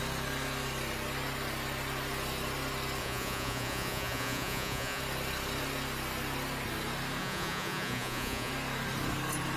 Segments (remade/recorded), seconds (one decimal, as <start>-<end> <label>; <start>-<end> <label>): 0.0-3.0 recorded; 3.0-5.0 remade; 5.0-7.2 recorded; 7.2-8.5 remade; 8.5-9.6 recorded